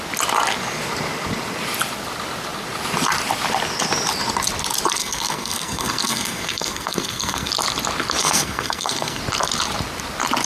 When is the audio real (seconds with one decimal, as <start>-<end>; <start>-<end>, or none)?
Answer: 0.0-5.0; 7.5-8.2; 9.2-10.5